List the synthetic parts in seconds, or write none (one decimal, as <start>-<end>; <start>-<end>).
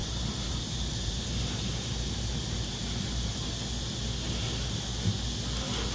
0.0-3.5